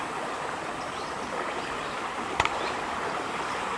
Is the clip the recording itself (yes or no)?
yes